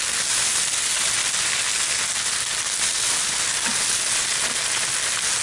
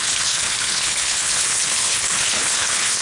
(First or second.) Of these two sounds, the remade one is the second